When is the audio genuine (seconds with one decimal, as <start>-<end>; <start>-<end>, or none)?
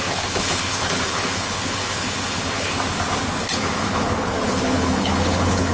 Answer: 2.7-3.4